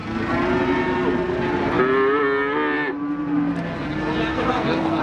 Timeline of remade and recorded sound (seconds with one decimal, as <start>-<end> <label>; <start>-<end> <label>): 0.0-4.3 recorded; 4.3-5.0 remade